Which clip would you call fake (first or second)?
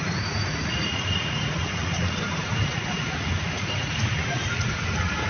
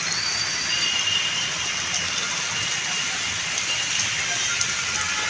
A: first